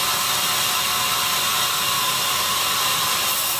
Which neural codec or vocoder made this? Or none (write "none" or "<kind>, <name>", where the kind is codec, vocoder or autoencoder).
vocoder, BigVGAN v2